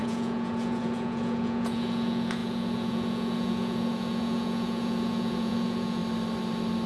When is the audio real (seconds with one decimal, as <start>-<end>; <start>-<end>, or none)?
6.0-6.9